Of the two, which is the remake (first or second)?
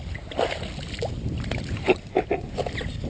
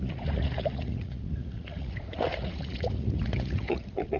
second